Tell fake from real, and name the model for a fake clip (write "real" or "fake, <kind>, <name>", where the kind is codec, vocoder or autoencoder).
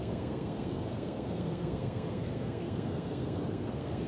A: fake, codec, SNAC